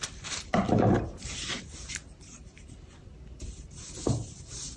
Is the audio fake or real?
fake